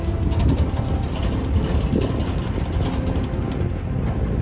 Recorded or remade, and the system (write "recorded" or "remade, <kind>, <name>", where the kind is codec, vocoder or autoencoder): recorded